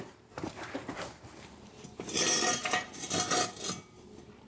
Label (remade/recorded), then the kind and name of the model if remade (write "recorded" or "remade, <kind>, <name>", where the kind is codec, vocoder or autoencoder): recorded